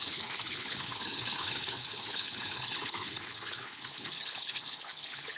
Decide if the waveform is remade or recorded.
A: remade